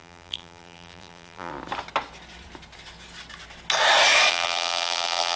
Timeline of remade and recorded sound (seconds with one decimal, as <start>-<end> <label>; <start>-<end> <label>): 0.0-1.5 remade; 1.5-4.3 recorded; 4.3-5.4 remade